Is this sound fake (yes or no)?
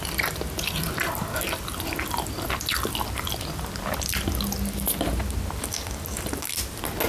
no